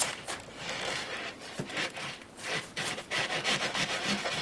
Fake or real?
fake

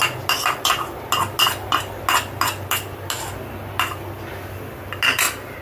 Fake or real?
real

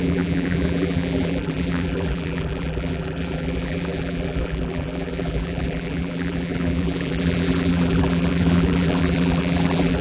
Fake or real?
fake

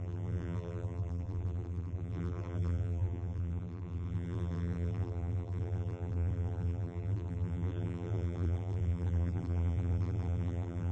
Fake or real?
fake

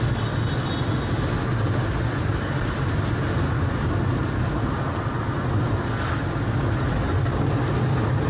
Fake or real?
real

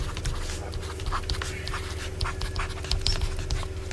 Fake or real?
real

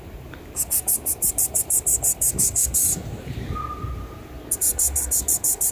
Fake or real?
fake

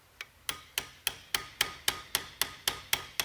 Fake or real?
real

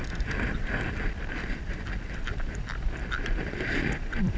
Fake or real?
fake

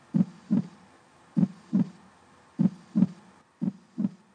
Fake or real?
real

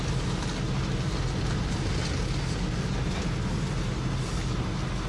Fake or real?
real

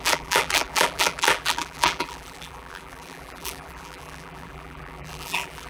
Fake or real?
fake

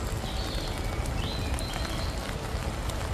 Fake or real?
real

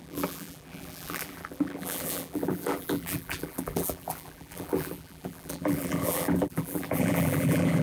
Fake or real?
fake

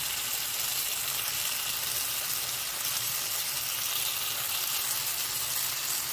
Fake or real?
real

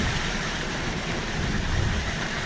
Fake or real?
fake